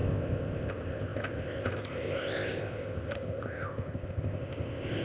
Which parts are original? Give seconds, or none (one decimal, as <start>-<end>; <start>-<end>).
none